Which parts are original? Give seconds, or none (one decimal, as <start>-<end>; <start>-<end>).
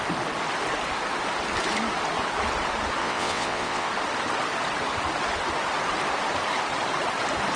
0.0-3.0; 3.9-7.6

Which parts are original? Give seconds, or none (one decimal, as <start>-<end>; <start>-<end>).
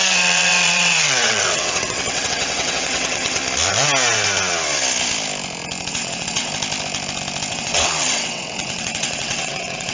3.4-5.9; 6.5-7.5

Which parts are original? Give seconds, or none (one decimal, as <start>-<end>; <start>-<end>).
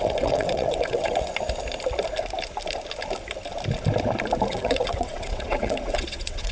1.3-4.5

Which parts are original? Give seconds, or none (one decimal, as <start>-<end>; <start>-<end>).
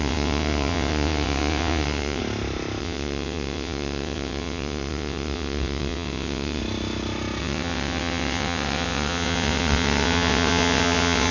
2.2-2.8; 6.6-7.4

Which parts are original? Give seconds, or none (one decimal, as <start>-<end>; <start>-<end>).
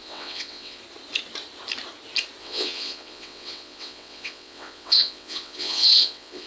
0.8-2.4